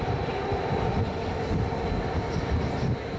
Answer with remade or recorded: recorded